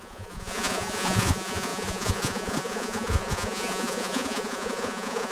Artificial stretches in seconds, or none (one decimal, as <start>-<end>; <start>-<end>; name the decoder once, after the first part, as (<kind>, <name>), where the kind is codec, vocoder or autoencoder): 0.0-5.3 (vocoder, Vocos)